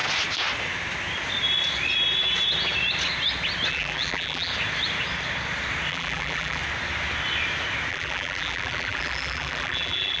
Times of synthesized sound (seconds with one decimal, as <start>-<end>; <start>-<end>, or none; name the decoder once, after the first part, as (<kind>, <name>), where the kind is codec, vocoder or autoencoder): 3.7-4.5 (vocoder, BigVGAN v2); 5.9-6.6; 7.9-10.2